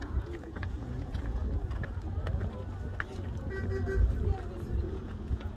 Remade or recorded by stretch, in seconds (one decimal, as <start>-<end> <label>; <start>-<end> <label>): 0.0-1.4 remade; 1.4-4.8 recorded; 4.8-5.6 remade